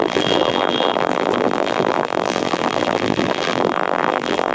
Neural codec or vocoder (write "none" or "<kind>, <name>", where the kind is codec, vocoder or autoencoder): vocoder, BigVGAN v2